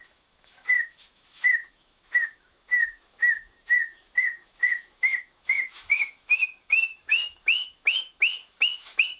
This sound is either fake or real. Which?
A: fake